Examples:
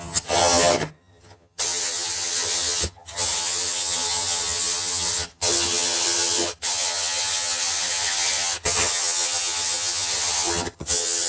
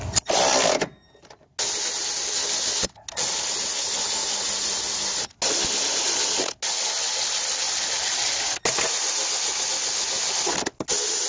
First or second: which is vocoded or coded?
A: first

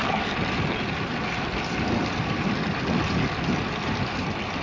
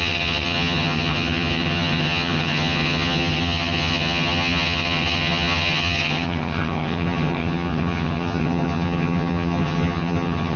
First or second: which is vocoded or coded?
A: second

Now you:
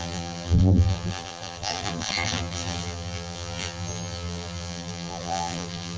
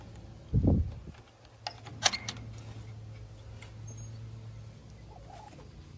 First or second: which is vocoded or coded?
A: first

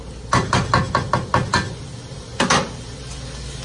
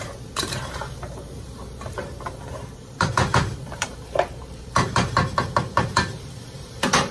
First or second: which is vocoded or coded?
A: second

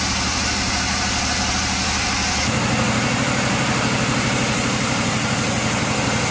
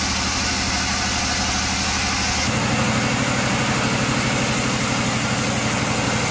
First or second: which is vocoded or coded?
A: first